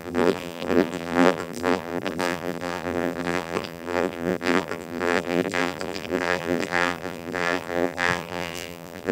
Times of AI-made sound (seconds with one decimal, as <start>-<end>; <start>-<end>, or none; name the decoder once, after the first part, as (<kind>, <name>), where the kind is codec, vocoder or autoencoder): 0.0-9.1 (vocoder, BigVGAN v2)